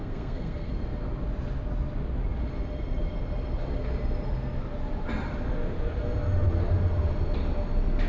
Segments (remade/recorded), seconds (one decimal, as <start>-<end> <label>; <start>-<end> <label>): 0.0-0.7 remade; 0.7-8.1 recorded